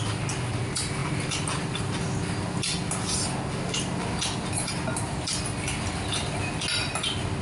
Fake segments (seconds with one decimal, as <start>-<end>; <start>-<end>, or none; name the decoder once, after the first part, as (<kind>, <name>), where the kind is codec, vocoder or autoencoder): none